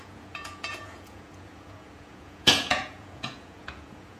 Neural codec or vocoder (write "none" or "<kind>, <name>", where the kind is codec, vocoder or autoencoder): vocoder, Vocos